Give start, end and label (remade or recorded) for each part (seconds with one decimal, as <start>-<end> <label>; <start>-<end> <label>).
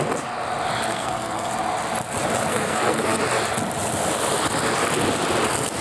0.0-0.9 recorded; 0.9-1.5 remade; 1.5-2.5 recorded; 2.5-3.2 remade; 3.2-5.8 recorded